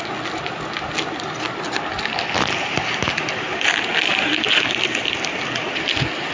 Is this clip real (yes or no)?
yes